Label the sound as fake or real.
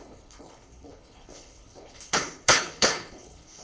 fake